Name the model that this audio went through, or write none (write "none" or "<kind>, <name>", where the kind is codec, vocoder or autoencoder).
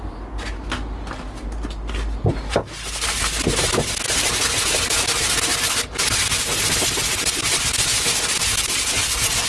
none